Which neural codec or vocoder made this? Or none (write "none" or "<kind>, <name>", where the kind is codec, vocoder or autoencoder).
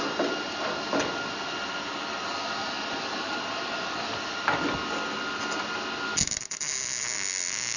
none